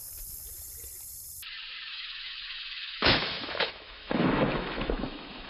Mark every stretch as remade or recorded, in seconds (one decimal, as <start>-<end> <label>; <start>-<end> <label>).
0.0-1.9 recorded; 1.9-5.5 remade